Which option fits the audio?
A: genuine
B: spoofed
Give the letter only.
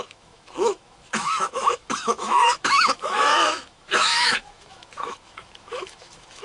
B